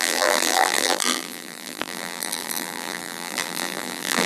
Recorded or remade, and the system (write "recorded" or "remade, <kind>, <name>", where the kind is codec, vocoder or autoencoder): remade, vocoder, BigVGAN v2